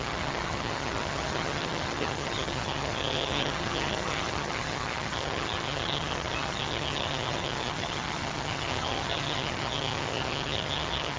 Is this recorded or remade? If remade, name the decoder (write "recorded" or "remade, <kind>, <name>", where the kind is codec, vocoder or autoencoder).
remade, vocoder, HiFi-GAN